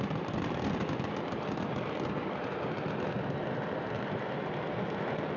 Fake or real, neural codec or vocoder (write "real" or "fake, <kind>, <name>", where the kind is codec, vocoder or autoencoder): real